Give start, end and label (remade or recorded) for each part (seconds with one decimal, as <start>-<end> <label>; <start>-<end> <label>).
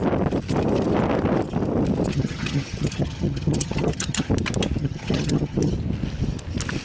0.0-2.1 recorded; 2.1-4.3 remade; 4.3-4.8 recorded; 4.8-5.7 remade; 5.7-6.8 recorded